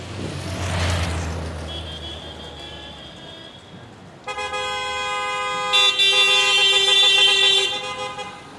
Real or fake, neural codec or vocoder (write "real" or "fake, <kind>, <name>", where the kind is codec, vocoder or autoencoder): real